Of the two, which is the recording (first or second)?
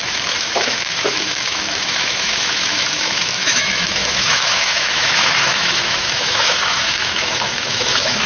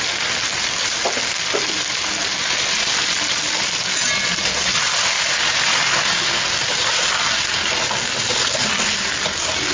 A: second